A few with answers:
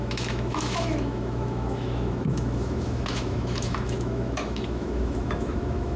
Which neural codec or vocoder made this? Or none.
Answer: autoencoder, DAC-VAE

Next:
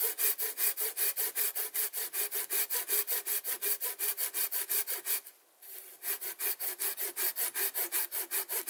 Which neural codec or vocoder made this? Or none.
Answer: none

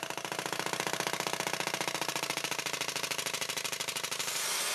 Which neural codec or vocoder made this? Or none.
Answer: none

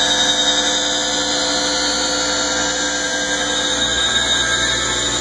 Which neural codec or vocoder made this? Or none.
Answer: none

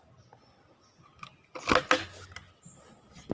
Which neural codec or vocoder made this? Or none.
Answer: none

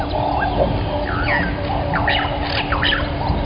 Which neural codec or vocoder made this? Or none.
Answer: none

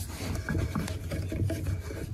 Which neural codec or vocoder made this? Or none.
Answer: none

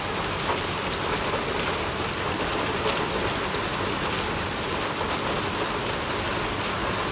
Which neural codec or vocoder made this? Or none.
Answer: none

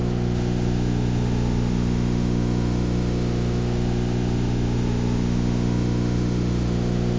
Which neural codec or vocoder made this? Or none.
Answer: autoencoder, DAC-VAE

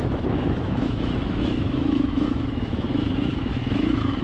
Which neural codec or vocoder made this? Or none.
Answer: autoencoder, DAC-VAE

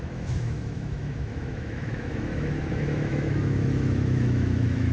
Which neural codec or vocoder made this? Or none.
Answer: autoencoder, DAC-VAE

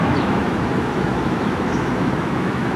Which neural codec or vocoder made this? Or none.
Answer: autoencoder, DAC-VAE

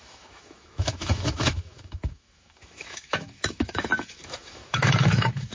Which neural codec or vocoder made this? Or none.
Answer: autoencoder, DAC-VAE